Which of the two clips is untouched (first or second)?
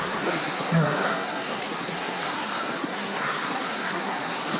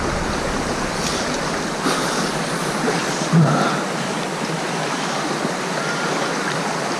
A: second